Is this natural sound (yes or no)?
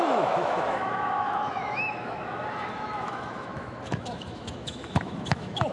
no